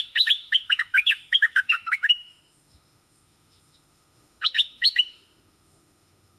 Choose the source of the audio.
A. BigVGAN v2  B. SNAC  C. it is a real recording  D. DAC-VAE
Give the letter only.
D